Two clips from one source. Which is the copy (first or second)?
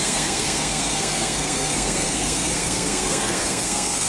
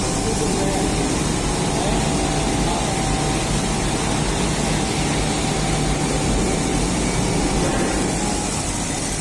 first